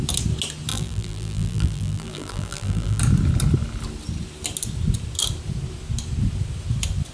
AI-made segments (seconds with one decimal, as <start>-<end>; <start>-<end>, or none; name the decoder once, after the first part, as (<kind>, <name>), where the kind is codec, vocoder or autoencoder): 0.7-3.0 (vocoder, BigVGAN v2)